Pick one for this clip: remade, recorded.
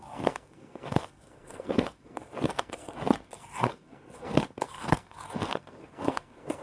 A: remade